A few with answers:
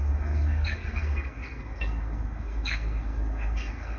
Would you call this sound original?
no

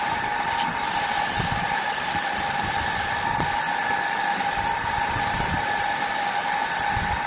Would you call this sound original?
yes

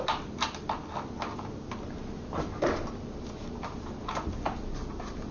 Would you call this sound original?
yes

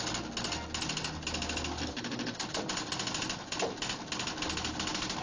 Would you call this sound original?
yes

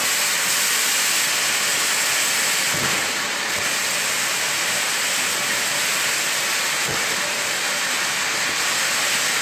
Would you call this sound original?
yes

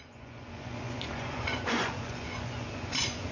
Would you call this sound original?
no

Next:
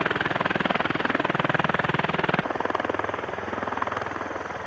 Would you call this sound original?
yes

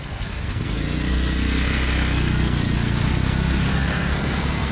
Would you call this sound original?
no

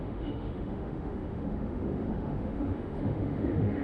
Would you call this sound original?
no